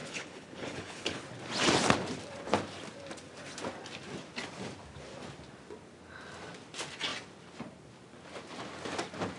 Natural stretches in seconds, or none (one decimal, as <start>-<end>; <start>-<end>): 1.2-9.4